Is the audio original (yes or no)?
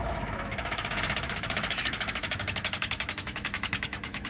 no